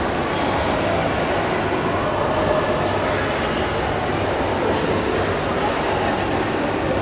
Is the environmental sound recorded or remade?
recorded